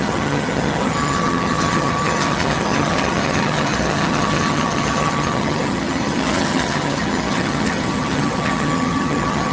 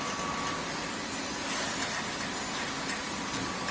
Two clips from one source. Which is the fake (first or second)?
first